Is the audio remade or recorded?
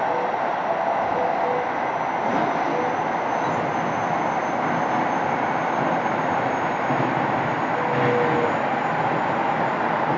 recorded